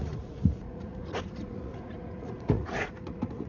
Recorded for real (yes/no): no